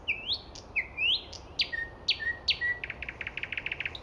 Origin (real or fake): real